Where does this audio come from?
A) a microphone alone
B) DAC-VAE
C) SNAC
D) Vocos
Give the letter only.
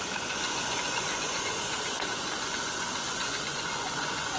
D